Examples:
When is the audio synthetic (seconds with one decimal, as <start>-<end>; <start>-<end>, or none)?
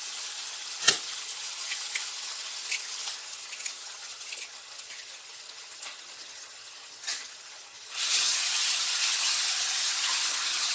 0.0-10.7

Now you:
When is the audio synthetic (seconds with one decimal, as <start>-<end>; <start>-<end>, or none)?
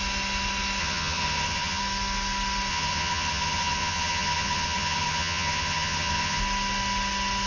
0.8-1.8; 2.7-6.4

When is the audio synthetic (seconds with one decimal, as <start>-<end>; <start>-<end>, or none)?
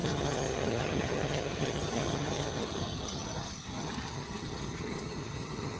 0.0-5.8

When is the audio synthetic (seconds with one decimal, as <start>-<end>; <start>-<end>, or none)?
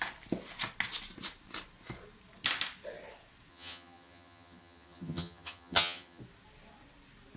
3.5-6.2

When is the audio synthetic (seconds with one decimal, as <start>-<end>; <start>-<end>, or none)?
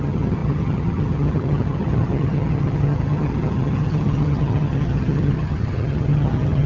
0.0-6.7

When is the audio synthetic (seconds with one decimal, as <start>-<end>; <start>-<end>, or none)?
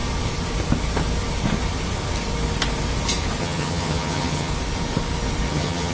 3.4-4.5; 5.5-5.9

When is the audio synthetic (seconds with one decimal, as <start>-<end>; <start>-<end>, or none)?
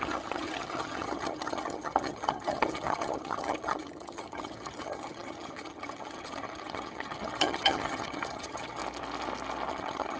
0.0-8.8; 9.7-10.2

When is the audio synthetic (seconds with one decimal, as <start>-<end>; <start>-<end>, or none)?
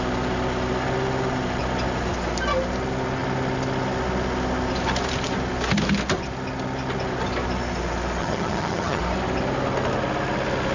8.2-9.0